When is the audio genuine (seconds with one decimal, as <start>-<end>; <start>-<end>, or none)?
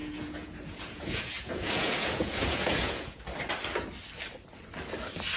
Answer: 3.2-5.4